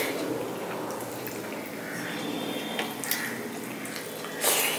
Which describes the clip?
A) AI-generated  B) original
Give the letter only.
B